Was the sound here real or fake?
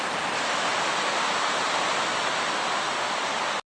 real